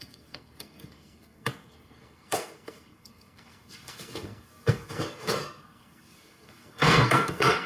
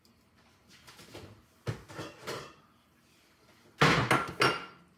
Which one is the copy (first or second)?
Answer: first